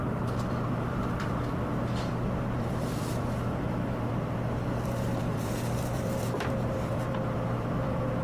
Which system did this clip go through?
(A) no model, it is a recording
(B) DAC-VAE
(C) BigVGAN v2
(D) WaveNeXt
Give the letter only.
C